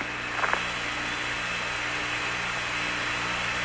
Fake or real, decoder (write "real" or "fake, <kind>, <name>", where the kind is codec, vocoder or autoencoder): real